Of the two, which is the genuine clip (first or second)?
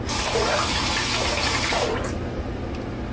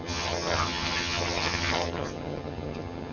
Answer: first